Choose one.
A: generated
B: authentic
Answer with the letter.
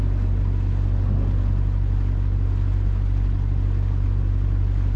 B